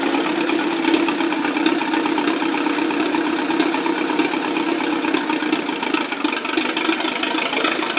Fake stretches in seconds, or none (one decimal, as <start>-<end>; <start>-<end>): none